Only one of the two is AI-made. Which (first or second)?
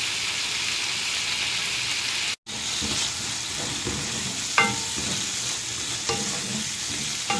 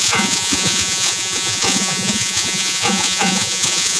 second